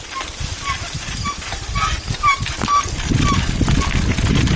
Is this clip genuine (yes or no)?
yes